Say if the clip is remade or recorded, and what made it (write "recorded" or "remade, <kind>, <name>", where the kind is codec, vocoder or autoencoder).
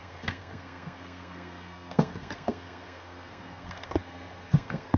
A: remade, codec, SNAC